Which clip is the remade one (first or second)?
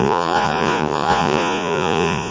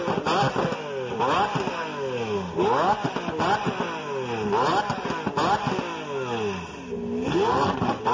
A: first